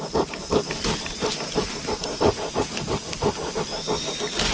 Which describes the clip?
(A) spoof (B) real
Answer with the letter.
B